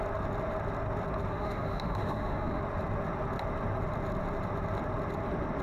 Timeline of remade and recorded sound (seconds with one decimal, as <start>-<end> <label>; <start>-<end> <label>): 0.0-1.3 recorded; 1.3-2.6 remade; 2.6-5.6 recorded